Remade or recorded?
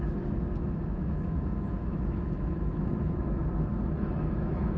remade